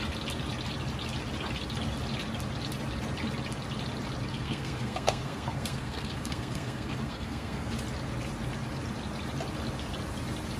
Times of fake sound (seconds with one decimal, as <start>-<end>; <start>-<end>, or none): 4.3-7.7